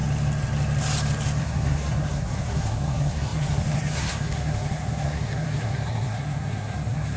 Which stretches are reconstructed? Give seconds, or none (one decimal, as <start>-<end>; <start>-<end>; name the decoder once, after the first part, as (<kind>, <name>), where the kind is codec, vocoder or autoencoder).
1.4-7.2 (codec, SNAC)